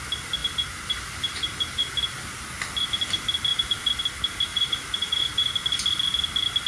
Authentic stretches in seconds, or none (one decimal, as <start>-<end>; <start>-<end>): 0.0-0.4; 1.9-3.5; 4.0-4.5; 5.5-6.7